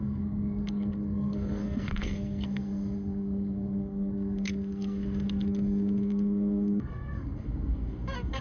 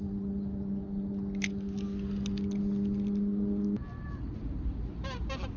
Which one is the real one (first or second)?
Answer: second